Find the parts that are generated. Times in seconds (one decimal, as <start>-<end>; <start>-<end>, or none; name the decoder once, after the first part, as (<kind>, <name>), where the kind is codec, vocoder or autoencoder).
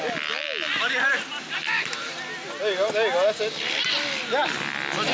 none